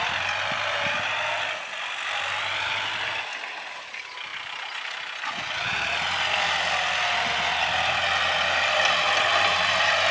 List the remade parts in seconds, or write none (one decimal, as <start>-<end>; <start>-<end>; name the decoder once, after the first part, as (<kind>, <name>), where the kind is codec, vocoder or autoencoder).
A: none